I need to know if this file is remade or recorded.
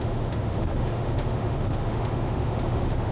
remade